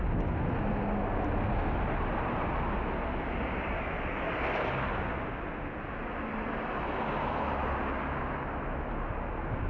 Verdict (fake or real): real